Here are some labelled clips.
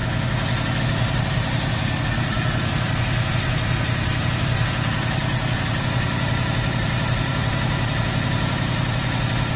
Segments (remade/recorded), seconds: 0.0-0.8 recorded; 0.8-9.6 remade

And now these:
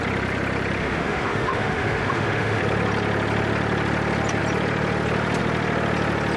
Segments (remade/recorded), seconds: 0.0-0.8 recorded; 0.8-2.6 remade; 2.6-6.4 recorded

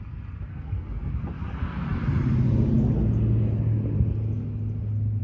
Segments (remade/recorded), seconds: 0.0-0.5 recorded; 0.5-1.1 remade; 1.1-5.2 recorded

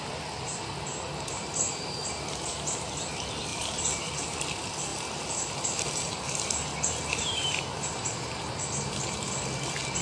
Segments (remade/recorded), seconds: 0.0-0.9 recorded; 0.9-2.1 remade; 2.1-3.5 recorded; 3.5-4.1 remade; 4.1-6.7 recorded; 6.7-9.3 remade; 9.3-10.0 recorded

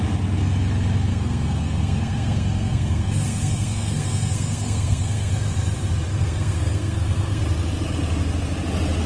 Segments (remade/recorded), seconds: 0.0-1.1 recorded; 1.1-5.3 remade; 5.3-6.1 recorded; 6.1-7.4 remade; 7.4-9.1 recorded

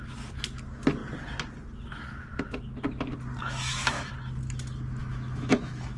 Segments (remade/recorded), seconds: 0.0-3.4 recorded; 3.4-4.1 remade; 4.1-5.0 recorded; 5.0-6.0 remade

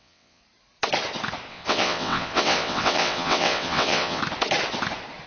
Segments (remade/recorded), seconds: 0.0-0.4 remade; 0.4-1.5 recorded; 1.5-4.2 remade; 4.2-5.3 recorded